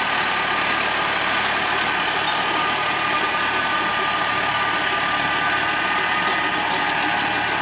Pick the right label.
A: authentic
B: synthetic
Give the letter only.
A